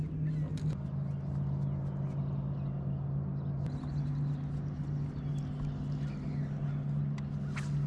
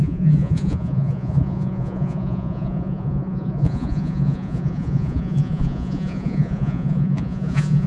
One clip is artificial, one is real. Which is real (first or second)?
first